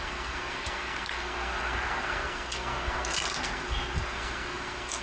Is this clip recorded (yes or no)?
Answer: no